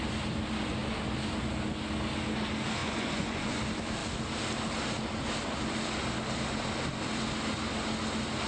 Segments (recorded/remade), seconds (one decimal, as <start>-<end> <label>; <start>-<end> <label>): 0.0-2.8 recorded; 2.8-3.6 remade; 3.6-8.5 recorded